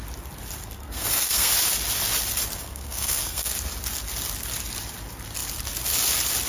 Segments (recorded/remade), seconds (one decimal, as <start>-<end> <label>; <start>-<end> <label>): 0.0-0.8 recorded; 0.8-1.5 remade; 1.5-2.6 recorded; 2.6-3.5 remade; 3.5-6.5 recorded